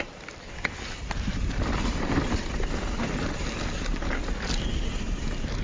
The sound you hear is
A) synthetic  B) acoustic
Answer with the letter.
A